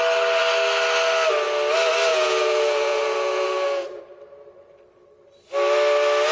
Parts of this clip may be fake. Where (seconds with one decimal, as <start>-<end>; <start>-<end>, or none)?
2.1-4.0